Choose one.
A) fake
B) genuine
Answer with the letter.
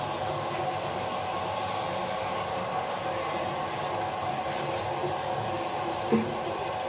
B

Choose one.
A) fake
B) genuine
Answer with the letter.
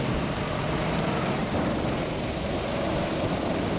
B